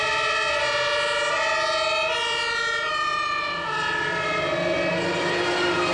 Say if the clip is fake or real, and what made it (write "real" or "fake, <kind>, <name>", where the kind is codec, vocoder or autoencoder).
real